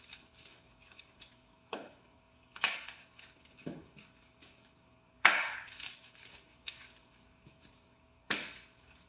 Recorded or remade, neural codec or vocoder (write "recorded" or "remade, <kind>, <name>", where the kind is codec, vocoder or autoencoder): remade, codec, DAC